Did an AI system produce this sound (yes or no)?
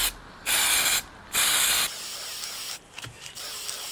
no